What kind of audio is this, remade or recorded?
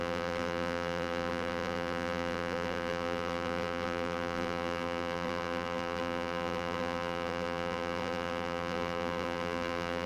remade